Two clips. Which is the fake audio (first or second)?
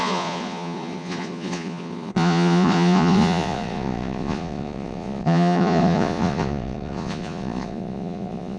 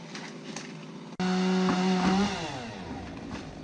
first